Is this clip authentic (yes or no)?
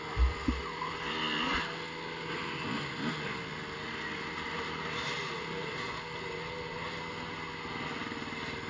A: yes